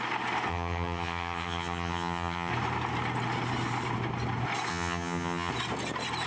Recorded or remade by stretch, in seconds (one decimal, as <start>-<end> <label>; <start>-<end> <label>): 0.0-0.5 recorded; 0.5-2.5 remade; 2.5-4.7 recorded; 4.7-5.5 remade; 5.5-6.3 recorded